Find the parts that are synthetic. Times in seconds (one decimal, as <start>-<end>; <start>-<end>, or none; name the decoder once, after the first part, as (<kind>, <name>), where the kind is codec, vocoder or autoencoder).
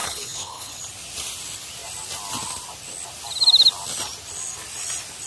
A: 0.0-0.8 (codec, HILCodec)